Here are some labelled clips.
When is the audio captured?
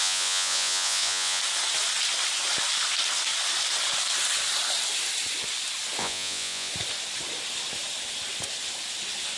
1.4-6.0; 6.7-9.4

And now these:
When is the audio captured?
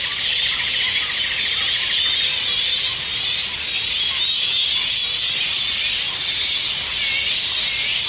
0.0-8.1